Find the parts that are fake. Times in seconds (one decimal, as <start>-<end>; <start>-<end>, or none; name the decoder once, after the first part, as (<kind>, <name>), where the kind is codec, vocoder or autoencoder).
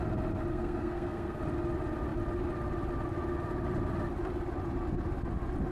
0.5-1.4 (codec, SNAC)